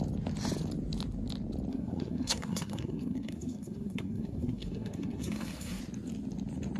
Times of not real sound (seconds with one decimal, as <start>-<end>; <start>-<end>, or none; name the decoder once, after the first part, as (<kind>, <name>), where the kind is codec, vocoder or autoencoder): 1.7-5.8 (codec, SNAC)